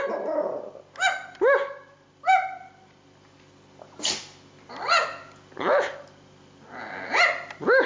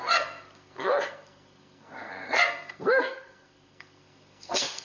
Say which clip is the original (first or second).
first